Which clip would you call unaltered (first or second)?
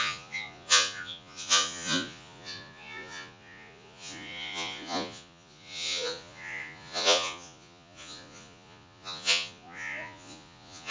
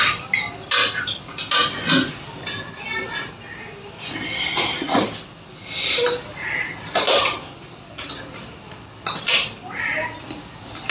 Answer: second